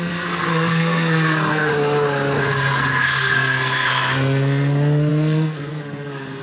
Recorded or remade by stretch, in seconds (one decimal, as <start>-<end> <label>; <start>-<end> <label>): 0.0-1.7 remade; 1.7-2.4 recorded; 2.4-6.4 remade